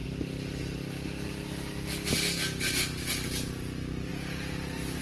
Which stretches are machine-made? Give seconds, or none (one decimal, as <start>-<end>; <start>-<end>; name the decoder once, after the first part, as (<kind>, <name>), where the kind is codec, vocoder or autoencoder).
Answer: 4.1-5.0 (vocoder, BigVGAN v2)